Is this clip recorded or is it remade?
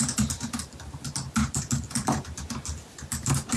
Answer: remade